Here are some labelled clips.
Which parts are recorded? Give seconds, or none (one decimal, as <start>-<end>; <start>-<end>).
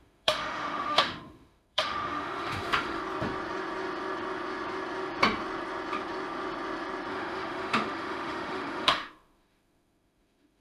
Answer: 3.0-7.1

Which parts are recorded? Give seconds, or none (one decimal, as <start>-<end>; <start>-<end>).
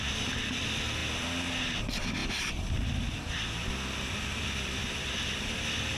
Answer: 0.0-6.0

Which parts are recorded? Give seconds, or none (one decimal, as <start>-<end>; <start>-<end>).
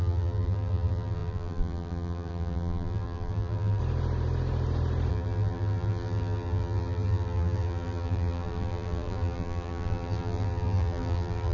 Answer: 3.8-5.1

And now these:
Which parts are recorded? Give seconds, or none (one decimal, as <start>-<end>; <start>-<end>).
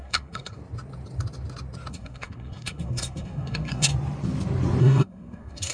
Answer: 0.6-1.9; 3.9-4.8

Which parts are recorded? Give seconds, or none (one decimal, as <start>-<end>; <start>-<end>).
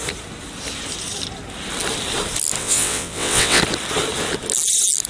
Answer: 0.0-2.6; 3.6-5.1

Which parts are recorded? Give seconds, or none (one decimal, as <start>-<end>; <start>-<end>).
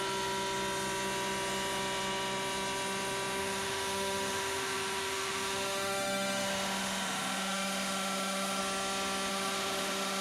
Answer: 0.0-3.4; 8.6-9.3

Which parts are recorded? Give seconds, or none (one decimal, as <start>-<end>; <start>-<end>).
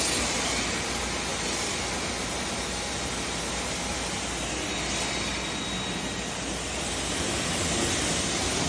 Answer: 0.0-8.7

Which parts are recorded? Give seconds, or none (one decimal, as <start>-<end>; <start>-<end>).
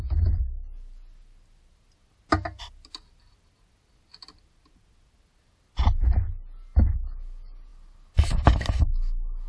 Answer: 0.0-9.5